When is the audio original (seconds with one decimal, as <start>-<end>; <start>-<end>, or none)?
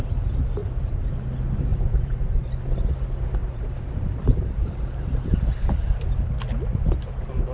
0.0-0.6; 1.1-1.7; 2.5-3.4; 5.3-7.5